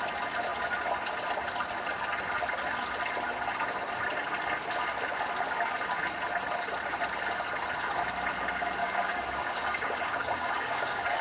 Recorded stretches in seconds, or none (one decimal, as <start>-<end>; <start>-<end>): 0.0-8.8

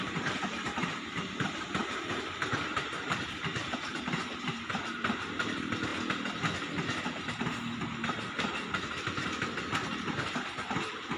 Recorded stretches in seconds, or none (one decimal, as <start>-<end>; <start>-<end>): 5.9-9.6

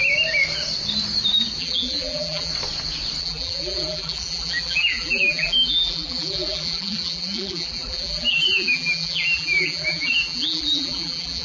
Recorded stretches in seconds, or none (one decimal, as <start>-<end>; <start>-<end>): 0.0-1.6; 2.5-3.2

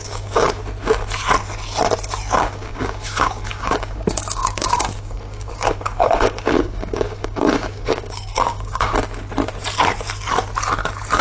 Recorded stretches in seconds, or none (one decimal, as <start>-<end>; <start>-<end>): 0.6-2.4; 8.9-11.2

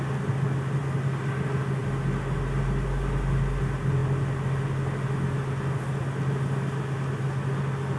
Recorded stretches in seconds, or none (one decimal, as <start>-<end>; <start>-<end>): 0.0-8.0

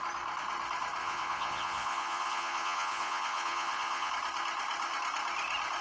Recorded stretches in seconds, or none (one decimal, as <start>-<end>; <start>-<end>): 0.0-1.0; 4.1-5.8